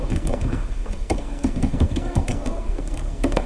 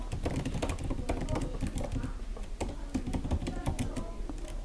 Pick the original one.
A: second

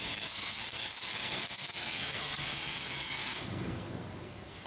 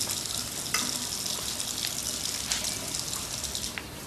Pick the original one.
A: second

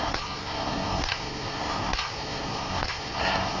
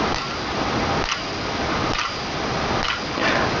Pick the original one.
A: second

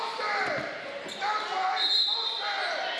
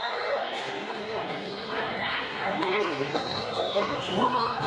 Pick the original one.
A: first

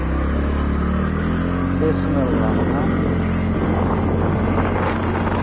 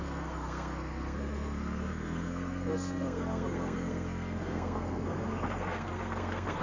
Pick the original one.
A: first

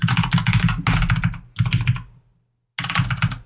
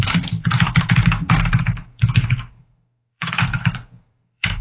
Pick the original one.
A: first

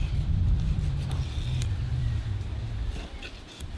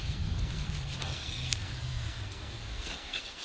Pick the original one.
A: first